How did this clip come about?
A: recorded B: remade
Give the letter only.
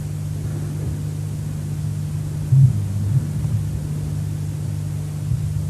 A